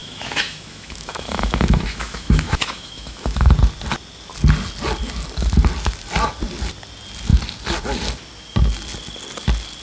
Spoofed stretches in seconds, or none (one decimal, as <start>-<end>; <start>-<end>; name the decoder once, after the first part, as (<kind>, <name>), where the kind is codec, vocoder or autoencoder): 0.0-3.5 (autoencoder, DAC-VAE)